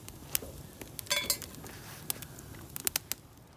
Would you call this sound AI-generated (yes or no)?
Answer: no